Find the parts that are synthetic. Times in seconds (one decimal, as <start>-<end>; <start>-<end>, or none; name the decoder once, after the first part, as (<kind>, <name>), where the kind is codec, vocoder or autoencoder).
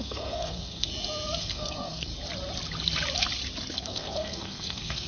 0.0-0.9 (codec, SNAC); 1.4-2.1; 3.7-5.1